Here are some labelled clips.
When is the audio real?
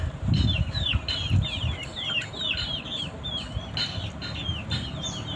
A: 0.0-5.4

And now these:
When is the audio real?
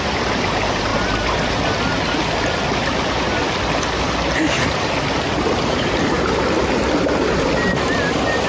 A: 0.0-0.9; 1.5-2.9; 6.6-8.5